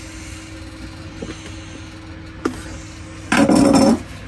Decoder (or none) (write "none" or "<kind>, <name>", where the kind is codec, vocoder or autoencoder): none